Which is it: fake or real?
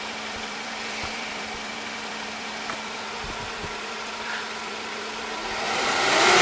fake